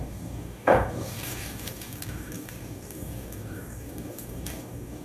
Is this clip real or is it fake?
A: fake